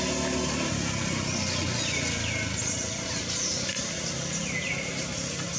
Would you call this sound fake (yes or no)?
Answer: no